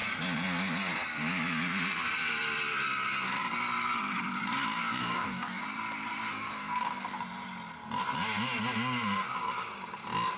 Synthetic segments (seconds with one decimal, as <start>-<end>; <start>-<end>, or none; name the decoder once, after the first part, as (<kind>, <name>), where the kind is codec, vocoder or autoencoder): 5.0-5.6 (codec, DAC); 6.3-7.2